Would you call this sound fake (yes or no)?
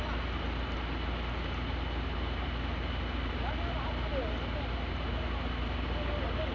no